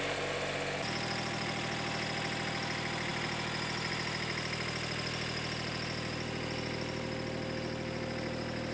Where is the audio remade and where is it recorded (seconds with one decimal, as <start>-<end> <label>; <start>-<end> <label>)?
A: 0.0-8.7 recorded